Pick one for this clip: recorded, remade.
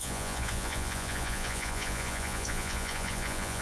remade